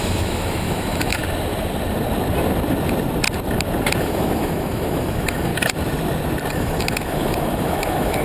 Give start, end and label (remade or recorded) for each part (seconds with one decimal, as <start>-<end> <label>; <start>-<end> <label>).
0.0-1.2 remade; 1.2-4.0 recorded; 4.0-5.5 remade; 5.5-6.5 recorded; 6.5-8.2 remade